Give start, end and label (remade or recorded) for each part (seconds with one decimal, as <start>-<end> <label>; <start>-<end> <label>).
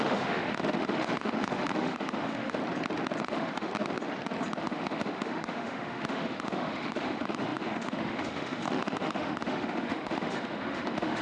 0.0-2.6 remade; 2.6-3.2 recorded; 3.2-3.7 remade; 3.7-4.6 recorded; 4.6-11.2 remade